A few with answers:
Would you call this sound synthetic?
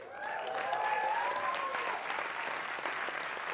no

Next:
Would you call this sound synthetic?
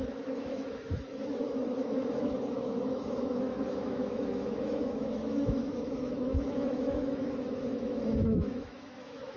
yes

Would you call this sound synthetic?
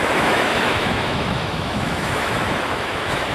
yes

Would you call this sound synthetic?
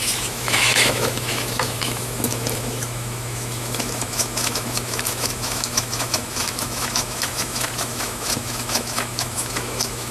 yes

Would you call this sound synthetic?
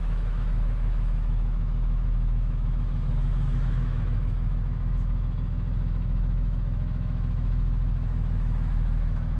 yes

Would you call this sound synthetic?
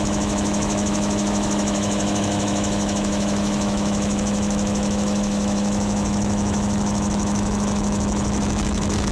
yes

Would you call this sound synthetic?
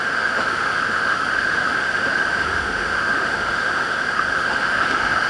yes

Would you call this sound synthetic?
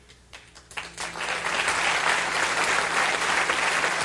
no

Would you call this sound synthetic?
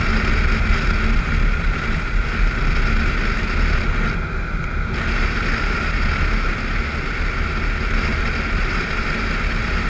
no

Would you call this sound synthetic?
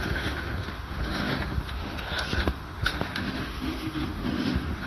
yes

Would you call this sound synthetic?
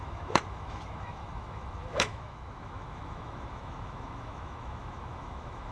yes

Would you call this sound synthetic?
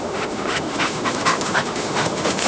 yes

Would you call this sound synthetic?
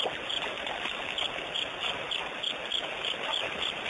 no